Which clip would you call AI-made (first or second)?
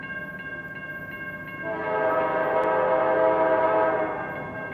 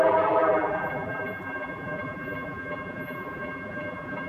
second